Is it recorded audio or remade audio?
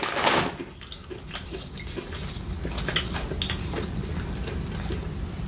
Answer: recorded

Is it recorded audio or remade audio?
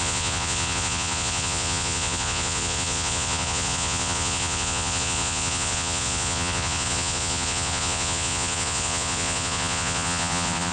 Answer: remade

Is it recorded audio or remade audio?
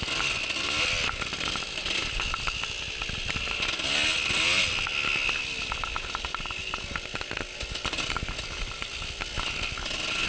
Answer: recorded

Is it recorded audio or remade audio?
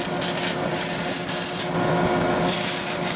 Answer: recorded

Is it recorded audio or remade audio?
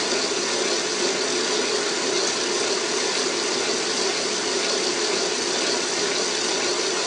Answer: recorded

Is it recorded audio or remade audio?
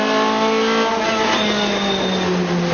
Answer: recorded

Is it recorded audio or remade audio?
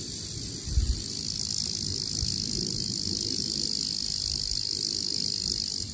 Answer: recorded